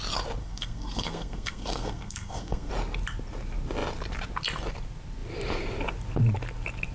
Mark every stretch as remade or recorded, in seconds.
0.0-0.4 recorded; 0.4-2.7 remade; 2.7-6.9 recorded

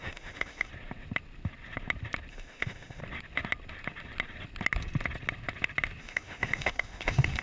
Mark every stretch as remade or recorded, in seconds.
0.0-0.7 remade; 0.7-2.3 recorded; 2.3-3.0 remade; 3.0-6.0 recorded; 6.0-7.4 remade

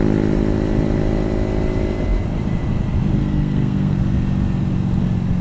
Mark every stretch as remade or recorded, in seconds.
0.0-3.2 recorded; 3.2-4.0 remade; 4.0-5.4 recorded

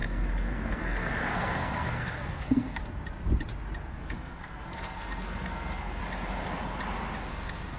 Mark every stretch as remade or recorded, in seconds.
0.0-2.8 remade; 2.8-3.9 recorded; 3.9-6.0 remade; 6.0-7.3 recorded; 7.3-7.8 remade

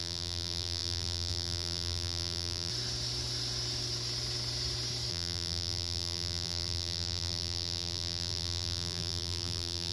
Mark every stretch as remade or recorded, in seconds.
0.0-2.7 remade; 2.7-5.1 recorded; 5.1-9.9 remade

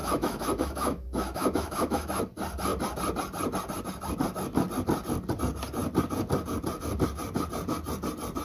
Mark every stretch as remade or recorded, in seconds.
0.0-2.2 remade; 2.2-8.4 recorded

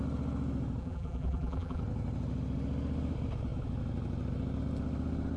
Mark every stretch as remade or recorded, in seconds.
0.0-0.8 recorded; 0.8-1.8 remade; 1.8-5.4 recorded

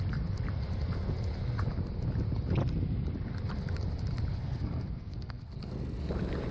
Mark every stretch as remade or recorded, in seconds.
0.0-4.4 recorded; 4.4-6.1 remade; 6.1-6.5 recorded